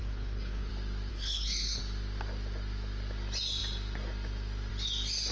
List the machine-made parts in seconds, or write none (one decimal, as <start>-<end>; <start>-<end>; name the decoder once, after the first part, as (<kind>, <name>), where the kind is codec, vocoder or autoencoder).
0.0-0.7 (codec, HILCodec); 1.1-1.8